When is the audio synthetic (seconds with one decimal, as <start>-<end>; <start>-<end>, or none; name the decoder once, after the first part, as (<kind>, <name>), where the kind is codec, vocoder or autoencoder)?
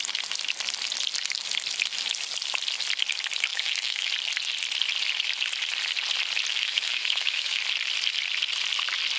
3.5-4.1 (autoencoder, DAC-VAE); 6.5-7.6